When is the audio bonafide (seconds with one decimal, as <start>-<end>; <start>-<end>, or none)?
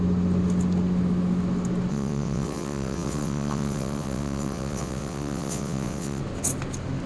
0.0-1.9; 6.2-7.1